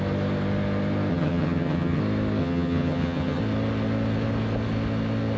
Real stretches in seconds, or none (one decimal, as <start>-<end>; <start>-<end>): 0.0-1.1; 2.0-2.4; 3.4-5.4